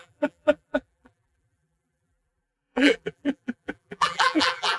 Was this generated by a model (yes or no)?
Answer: yes